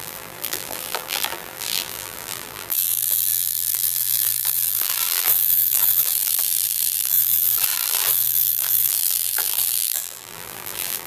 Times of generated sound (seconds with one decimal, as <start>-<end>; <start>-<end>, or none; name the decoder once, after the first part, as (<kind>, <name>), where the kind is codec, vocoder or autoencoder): 0.0-11.1 (vocoder, BigVGAN v2)